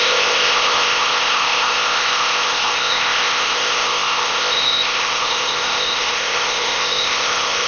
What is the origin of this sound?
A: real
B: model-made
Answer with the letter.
B